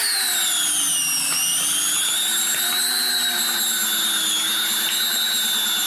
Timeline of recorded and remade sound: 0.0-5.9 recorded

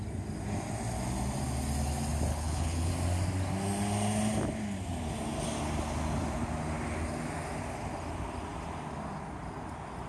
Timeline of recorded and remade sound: 0.0-2.3 recorded; 2.3-2.9 remade; 2.9-10.1 recorded